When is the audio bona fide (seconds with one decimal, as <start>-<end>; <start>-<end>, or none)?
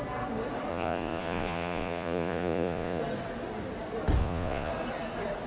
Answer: 0.0-0.7; 3.0-4.2; 4.7-5.5